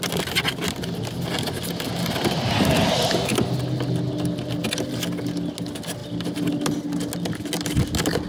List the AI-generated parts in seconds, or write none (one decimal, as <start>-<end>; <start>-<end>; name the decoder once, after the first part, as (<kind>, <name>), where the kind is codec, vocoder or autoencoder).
none